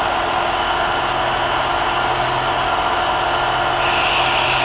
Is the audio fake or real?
real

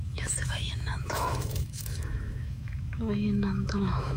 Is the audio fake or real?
fake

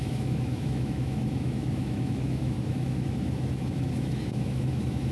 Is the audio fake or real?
fake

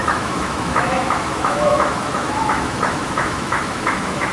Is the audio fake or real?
fake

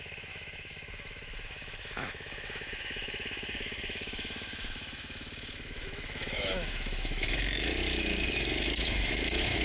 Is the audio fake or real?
fake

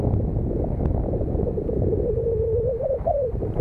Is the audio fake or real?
real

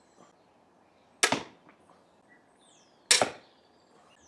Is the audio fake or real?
real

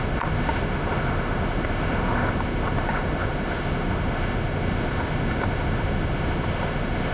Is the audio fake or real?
fake